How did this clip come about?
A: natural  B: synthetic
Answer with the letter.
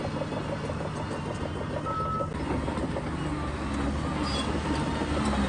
A